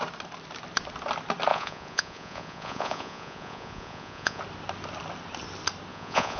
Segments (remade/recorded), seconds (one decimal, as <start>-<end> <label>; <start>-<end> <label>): 0.0-1.5 recorded; 1.5-4.4 remade; 4.4-5.9 recorded; 5.9-6.4 remade